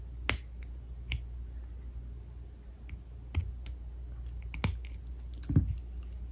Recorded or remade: recorded